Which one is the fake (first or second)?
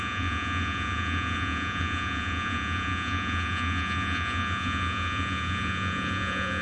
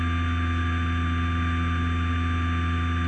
first